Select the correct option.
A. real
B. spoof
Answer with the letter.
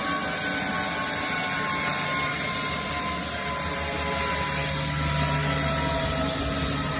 A